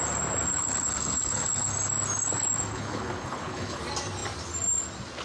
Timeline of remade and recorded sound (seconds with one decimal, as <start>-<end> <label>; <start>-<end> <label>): 0.0-0.5 recorded; 0.5-1.7 remade; 1.7-2.7 recorded; 2.7-3.8 remade; 3.8-5.2 recorded